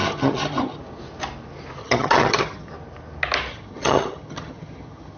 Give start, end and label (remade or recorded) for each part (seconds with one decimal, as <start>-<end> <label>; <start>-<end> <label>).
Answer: 0.0-0.8 remade; 0.8-1.8 recorded; 1.8-2.7 remade; 2.7-3.5 recorded; 3.5-5.2 remade